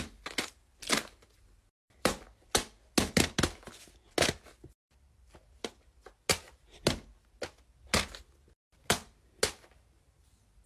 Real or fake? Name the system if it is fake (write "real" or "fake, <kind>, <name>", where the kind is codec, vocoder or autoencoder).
real